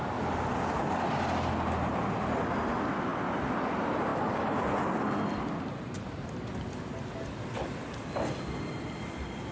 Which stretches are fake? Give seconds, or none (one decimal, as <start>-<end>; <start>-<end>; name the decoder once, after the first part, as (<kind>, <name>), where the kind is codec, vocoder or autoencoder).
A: none

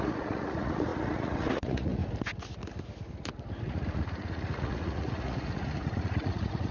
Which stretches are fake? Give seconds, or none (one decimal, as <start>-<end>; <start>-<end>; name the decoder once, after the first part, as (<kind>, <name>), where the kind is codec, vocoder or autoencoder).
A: 0.0-2.0 (vocoder, Vocos); 3.6-6.7

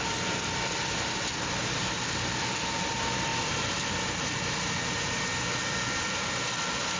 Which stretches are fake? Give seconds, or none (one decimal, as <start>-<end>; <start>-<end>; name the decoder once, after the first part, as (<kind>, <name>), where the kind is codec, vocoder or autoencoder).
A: none

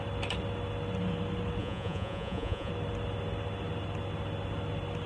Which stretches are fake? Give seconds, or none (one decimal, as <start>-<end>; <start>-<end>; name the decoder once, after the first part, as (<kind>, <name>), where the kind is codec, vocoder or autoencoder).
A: 1.6-2.7 (vocoder, Vocos)

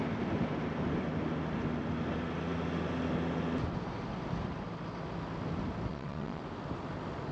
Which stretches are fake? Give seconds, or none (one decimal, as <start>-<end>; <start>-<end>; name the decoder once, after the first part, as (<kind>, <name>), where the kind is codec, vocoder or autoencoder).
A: 5.9-6.4 (vocoder, Vocos)

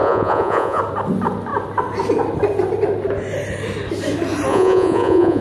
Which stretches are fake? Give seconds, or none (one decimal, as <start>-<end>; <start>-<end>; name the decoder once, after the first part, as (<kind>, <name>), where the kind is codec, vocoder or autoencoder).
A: 0.0-0.8 (vocoder, Vocos); 4.5-5.4

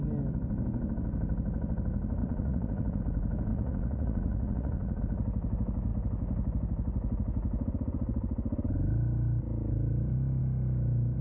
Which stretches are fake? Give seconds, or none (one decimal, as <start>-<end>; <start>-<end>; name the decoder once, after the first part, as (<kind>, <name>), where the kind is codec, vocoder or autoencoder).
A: 2.2-3.0 (vocoder, Vocos); 3.5-5.0

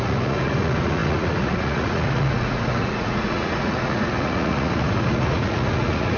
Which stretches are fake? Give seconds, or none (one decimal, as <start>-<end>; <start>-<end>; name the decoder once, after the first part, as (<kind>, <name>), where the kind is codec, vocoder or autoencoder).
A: 0.0-6.2 (vocoder, Vocos)